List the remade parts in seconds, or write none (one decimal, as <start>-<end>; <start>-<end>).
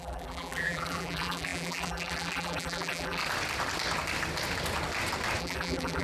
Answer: 0.0-3.2; 5.4-6.0